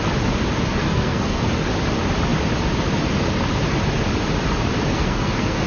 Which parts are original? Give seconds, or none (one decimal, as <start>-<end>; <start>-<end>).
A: 0.0-0.8; 1.4-4.9

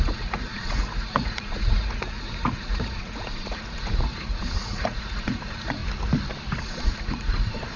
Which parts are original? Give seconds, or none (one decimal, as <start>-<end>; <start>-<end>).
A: 5.8-6.6